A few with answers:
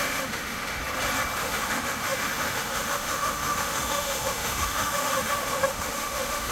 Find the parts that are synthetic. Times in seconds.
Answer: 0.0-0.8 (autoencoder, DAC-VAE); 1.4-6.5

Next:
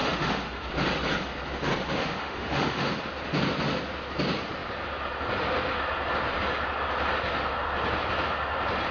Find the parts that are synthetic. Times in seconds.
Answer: 0.0-0.7 (autoencoder, DAC-VAE); 2.0-2.9

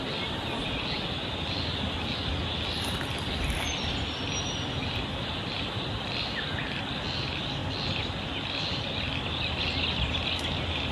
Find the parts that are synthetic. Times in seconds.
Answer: none

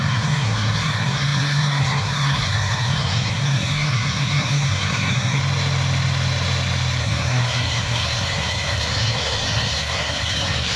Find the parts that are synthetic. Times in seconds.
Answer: 0.0-5.4 (codec, SNAC); 7.0-10.8